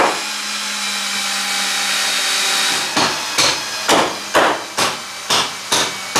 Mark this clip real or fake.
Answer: real